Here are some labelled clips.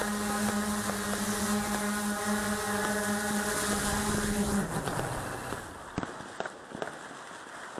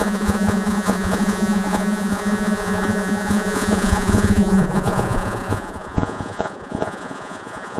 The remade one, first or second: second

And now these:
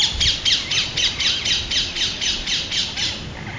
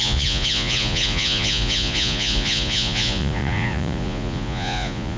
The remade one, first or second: second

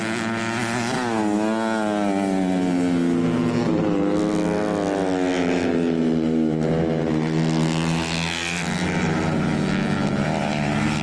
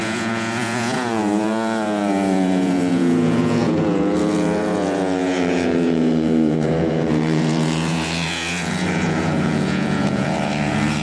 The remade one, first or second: second